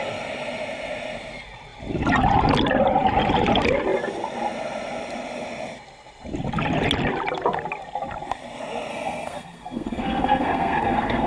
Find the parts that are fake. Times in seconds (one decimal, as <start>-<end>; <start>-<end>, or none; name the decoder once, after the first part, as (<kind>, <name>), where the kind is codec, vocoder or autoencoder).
8.9-11.3 (codec, SNAC)